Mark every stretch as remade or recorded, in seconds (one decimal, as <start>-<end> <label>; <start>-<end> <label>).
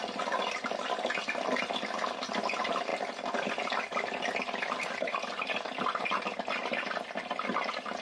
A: 0.0-8.0 recorded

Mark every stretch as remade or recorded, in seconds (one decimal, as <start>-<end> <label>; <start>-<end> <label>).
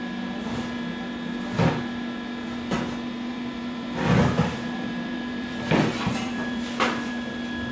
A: 0.0-3.3 recorded; 3.3-7.1 remade; 7.1-7.7 recorded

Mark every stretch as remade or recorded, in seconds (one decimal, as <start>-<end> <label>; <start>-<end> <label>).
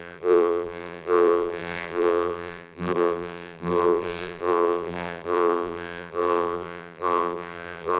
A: 0.0-8.0 remade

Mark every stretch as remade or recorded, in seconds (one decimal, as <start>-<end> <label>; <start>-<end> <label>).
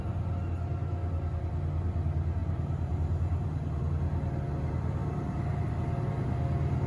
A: 0.0-2.4 recorded; 2.4-3.9 remade; 3.9-6.9 recorded